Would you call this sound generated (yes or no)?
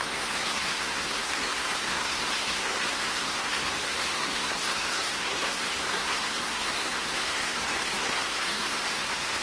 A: yes